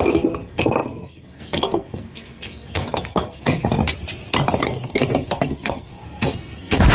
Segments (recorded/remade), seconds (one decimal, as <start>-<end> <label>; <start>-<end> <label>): 0.0-3.8 remade; 3.8-4.6 recorded; 4.6-6.9 remade